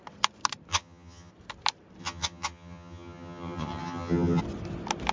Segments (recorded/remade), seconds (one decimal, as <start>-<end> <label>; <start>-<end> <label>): 0.0-0.7 recorded; 0.7-1.3 remade; 1.3-2.0 recorded; 2.0-4.4 remade; 4.4-5.1 recorded